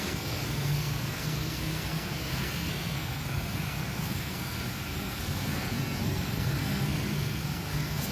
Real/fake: fake